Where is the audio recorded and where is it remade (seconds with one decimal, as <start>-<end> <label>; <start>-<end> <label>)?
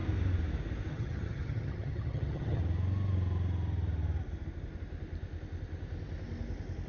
0.0-0.9 recorded; 0.9-2.6 remade; 2.6-6.9 recorded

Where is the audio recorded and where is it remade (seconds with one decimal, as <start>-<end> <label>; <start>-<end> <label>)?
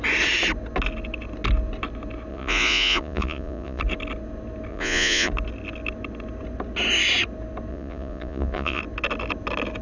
0.0-2.3 recorded; 2.3-3.8 remade; 3.8-4.7 recorded; 4.7-5.3 remade; 5.3-7.7 recorded; 7.7-8.8 remade; 8.8-9.8 recorded